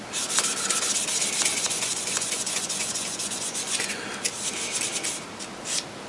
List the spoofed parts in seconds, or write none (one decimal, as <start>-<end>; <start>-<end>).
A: 1.5-4.0